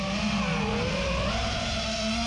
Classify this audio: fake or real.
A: real